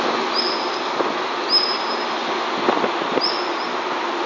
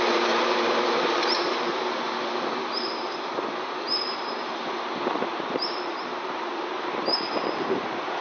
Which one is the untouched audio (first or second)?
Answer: first